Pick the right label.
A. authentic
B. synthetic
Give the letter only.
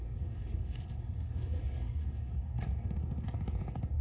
B